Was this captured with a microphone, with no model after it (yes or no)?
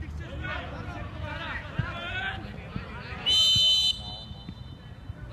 yes